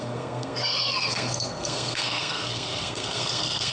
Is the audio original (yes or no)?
no